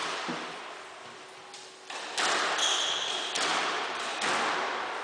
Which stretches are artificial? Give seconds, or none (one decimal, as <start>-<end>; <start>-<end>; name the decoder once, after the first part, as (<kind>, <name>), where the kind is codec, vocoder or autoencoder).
0.0-0.7 (vocoder, BigVGAN v2)